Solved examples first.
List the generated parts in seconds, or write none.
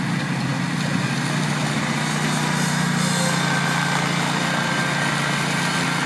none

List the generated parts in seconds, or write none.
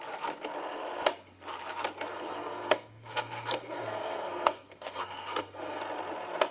2.1-5.8 (codec, SNAC)